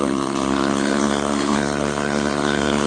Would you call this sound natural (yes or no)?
no